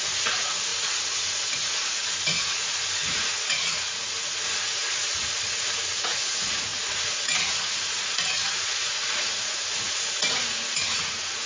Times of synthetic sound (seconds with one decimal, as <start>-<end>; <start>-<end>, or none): 0.0-11.5